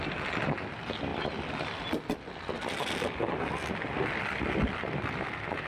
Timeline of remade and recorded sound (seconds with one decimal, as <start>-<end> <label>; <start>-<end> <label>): 0.0-5.7 recorded

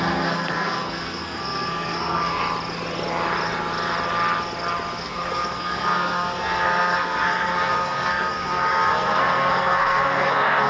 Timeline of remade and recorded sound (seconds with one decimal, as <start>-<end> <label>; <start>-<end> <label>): 0.0-2.4 remade; 2.4-5.0 recorded; 5.0-10.7 remade

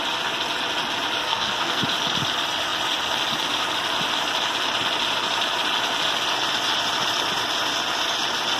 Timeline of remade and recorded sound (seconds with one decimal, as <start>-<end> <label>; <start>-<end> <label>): 0.0-1.2 recorded; 1.2-1.8 remade; 1.8-8.6 recorded

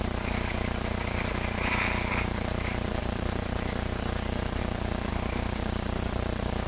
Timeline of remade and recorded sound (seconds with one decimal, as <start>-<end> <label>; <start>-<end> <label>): 0.0-3.0 recorded; 3.0-4.6 remade; 4.6-5.1 recorded; 5.1-6.7 remade

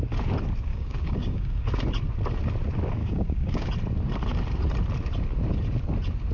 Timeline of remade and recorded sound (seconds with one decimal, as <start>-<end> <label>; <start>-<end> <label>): 0.0-0.7 recorded; 0.7-1.7 remade; 1.7-3.0 recorded; 3.0-3.7 remade; 3.7-6.3 recorded

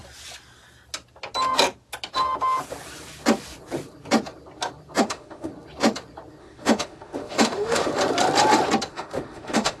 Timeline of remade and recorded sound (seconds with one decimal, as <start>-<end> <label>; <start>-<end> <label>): 0.0-5.0 recorded; 5.0-5.5 remade; 5.5-6.4 recorded; 6.4-7.9 remade; 7.9-8.9 recorded; 8.9-9.8 remade